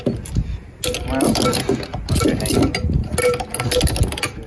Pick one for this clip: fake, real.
real